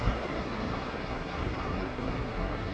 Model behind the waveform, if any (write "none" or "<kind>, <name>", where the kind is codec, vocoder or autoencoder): codec, SNAC